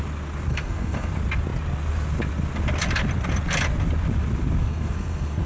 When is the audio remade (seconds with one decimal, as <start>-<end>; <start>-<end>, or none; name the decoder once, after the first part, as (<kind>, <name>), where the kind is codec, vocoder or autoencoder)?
0.5-1.1 (codec, SNAC); 4.6-5.5